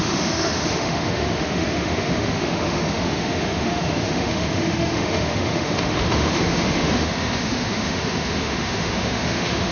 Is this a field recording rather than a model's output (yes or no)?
no